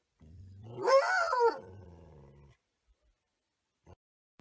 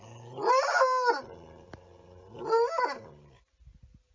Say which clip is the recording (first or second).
second